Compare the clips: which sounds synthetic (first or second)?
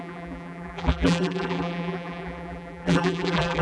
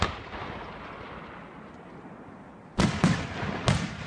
first